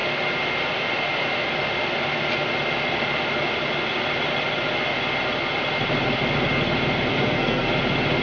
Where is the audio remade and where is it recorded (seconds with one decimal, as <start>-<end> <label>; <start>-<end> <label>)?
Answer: 0.0-7.1 recorded; 7.1-7.7 remade; 7.7-8.2 recorded